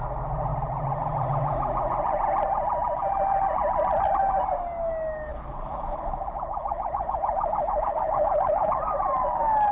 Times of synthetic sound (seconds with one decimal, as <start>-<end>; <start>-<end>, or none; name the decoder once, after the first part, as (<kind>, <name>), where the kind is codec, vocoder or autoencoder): 5.3-8.7 (codec, HILCodec)